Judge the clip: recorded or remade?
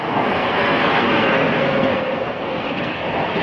remade